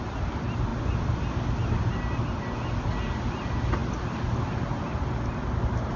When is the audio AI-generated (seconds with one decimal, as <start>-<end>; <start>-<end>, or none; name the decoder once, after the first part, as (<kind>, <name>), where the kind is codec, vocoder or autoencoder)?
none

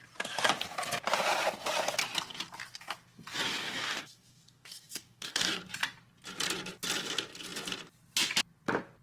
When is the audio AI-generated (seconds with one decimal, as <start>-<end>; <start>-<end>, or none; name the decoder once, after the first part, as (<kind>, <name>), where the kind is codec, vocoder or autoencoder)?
3.6-5.6 (codec, DAC)

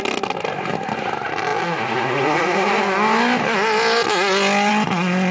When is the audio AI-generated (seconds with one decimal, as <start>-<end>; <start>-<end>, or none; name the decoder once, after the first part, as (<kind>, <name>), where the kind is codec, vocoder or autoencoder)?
none

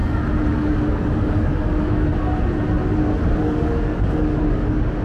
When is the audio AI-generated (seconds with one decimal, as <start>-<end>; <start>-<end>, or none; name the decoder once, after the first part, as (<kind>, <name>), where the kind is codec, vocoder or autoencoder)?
0.5-2.1 (codec, DAC); 3.4-5.0

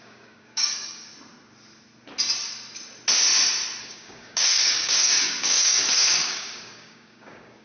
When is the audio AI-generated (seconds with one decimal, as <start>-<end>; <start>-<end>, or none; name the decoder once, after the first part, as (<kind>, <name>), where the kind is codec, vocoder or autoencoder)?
0.0-1.1 (codec, DAC); 3.8-7.6

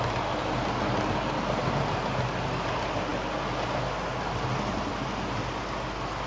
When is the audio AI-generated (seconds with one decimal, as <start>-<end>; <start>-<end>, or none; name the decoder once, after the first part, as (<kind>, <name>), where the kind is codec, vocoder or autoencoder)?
none

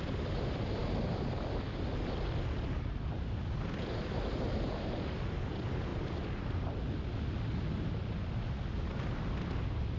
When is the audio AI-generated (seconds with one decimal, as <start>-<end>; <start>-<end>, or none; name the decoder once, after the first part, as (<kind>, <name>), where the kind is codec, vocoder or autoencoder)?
none